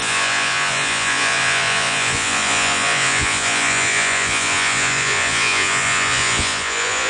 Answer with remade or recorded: remade